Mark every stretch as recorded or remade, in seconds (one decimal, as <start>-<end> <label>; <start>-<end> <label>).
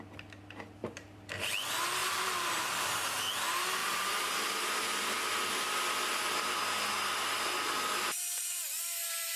0.0-0.8 recorded; 0.8-1.3 remade; 1.3-2.0 recorded; 2.0-3.2 remade; 3.2-3.8 recorded; 3.8-4.8 remade; 4.8-9.4 recorded